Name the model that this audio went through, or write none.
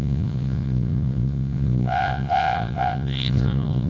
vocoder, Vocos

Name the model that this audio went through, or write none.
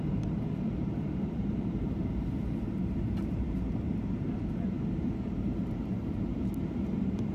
vocoder, BigVGAN v2